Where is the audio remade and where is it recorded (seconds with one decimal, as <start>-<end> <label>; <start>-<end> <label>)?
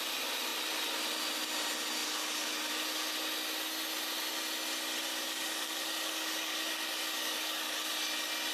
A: 0.0-2.0 recorded; 2.0-2.7 remade; 2.7-5.1 recorded; 5.1-7.9 remade; 7.9-8.5 recorded